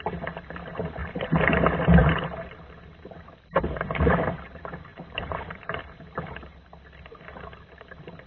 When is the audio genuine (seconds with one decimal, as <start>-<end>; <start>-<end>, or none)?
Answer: 0.0-1.0; 1.5-2.0; 4.2-4.9; 5.8-8.3